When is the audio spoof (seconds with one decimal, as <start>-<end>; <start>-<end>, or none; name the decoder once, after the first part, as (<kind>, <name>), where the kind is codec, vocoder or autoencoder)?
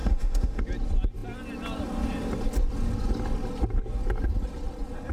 0.0-0.6 (autoencoder, DAC-VAE)